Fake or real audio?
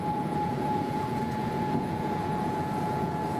fake